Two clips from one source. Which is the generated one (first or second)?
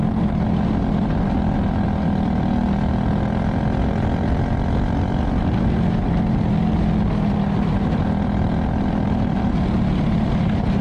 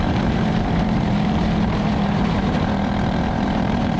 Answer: second